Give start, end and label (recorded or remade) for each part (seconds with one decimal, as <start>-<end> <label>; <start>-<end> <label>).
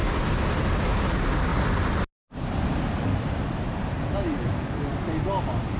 0.0-5.8 recorded